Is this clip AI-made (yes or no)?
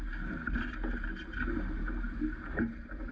no